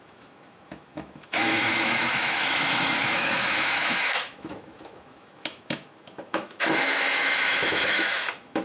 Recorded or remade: remade